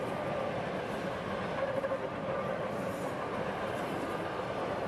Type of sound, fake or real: real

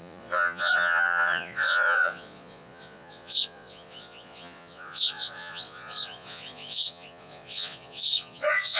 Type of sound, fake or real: fake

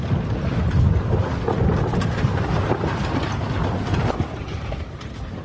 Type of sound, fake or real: real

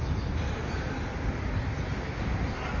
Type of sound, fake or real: real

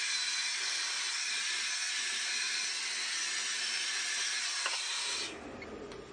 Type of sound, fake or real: real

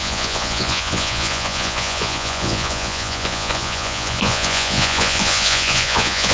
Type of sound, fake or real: fake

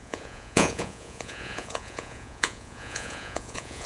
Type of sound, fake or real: fake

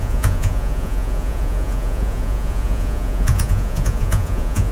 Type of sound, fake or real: fake